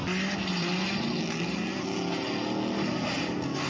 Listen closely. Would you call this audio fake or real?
real